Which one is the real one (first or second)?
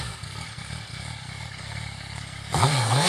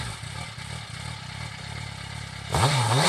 second